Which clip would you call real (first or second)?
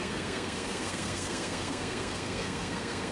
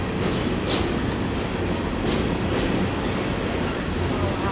second